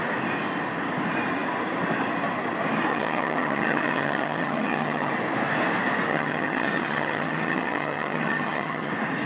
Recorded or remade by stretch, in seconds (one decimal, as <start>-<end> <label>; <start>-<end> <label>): 0.0-2.9 recorded; 2.9-5.1 remade; 5.1-6.1 recorded; 6.1-8.9 remade; 8.9-9.3 recorded

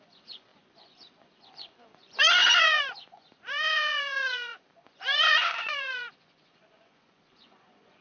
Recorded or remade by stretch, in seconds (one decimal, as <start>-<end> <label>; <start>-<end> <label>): 0.0-8.0 remade

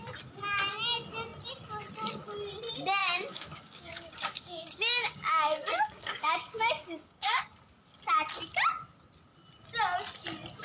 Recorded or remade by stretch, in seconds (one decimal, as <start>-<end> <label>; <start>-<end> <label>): 0.0-3.0 recorded; 3.0-7.4 remade; 7.4-10.6 recorded

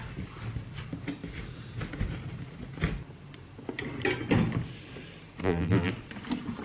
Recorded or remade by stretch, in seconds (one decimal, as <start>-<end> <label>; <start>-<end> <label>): 0.0-5.4 recorded; 5.4-5.9 remade; 5.9-6.6 recorded

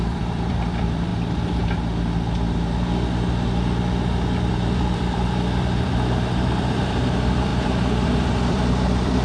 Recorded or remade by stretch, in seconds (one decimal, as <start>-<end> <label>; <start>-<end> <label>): 0.0-1.1 remade; 1.1-4.5 recorded; 4.5-9.2 remade

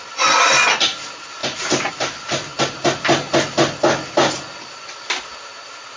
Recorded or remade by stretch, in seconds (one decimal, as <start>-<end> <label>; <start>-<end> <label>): 0.0-6.0 recorded

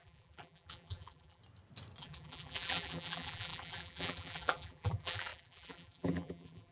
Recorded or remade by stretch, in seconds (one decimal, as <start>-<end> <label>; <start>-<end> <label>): 0.0-1.4 remade; 1.4-2.0 recorded; 2.0-6.7 remade